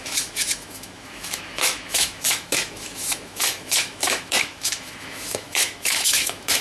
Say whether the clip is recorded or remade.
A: remade